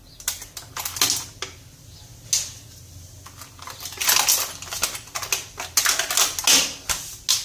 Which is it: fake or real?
real